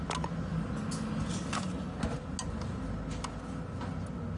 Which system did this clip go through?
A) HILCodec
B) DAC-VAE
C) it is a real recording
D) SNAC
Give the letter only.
C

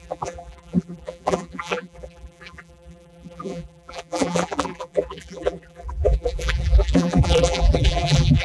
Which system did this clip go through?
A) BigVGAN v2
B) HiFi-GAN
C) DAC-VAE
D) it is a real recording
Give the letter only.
A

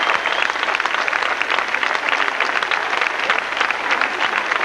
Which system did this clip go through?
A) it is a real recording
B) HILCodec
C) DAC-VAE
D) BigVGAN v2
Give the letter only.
A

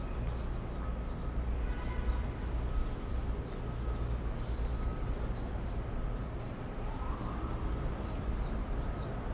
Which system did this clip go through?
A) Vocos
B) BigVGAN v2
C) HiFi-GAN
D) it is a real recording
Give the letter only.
D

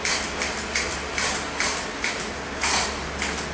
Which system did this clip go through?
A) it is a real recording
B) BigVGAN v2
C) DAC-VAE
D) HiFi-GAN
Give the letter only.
A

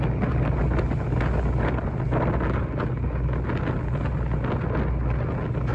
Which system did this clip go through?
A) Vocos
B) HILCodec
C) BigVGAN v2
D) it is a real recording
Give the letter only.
D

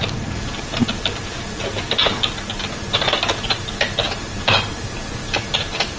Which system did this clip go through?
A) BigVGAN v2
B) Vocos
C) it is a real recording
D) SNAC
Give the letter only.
C